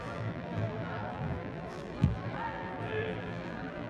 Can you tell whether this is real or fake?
fake